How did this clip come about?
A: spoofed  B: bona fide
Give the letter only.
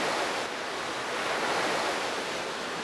B